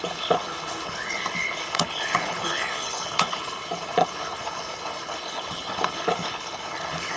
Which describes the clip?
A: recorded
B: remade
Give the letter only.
B